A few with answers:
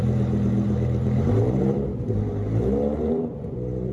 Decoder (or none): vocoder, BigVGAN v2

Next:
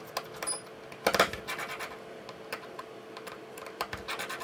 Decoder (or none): none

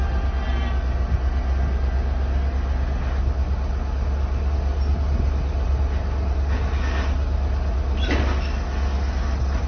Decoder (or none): none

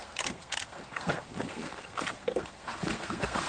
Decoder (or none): codec, SNAC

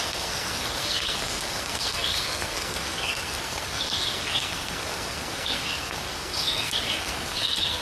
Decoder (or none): codec, SNAC